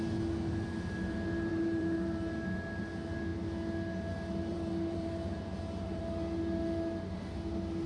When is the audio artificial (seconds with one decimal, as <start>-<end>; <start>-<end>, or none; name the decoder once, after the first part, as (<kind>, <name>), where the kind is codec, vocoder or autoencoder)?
1.5-2.8 (vocoder, BigVGAN v2); 4.5-6.0